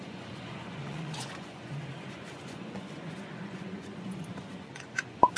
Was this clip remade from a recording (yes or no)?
yes